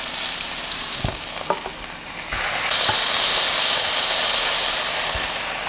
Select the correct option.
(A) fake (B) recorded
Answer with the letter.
B